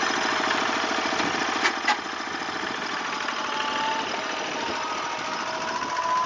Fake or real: real